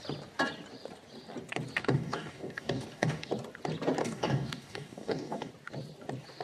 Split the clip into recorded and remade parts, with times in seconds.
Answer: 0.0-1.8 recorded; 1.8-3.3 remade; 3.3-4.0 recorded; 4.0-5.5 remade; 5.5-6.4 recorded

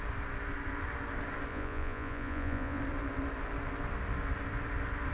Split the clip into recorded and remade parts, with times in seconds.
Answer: 0.0-1.5 recorded; 1.5-2.8 remade; 2.8-5.1 recorded

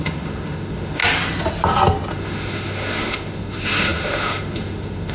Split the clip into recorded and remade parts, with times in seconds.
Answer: 0.0-1.0 remade; 1.0-2.1 recorded; 2.1-5.1 remade

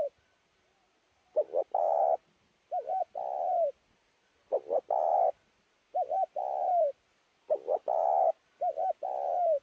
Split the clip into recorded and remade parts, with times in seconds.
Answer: 0.0-9.6 recorded

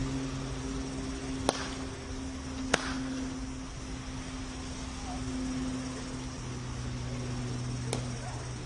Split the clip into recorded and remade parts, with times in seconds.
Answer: 0.0-8.7 recorded

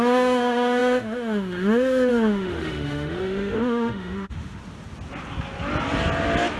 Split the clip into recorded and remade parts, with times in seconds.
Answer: 0.0-4.6 remade; 4.6-6.6 recorded